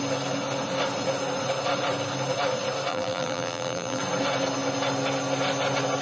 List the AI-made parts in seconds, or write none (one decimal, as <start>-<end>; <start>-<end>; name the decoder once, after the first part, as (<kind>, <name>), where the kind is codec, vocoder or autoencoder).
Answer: 2.9-4.0 (vocoder, BigVGAN v2)